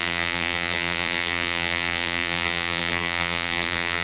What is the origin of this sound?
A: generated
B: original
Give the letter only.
A